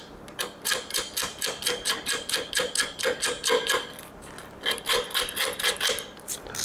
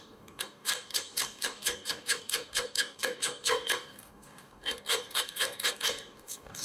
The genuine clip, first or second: first